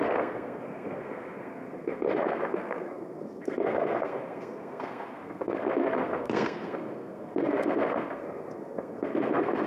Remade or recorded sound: remade